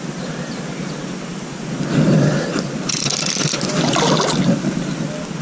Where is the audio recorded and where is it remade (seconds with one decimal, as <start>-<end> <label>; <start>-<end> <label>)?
0.0-5.4 recorded